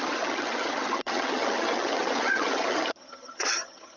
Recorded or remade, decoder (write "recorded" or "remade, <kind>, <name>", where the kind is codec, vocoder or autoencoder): remade, vocoder, HiFi-GAN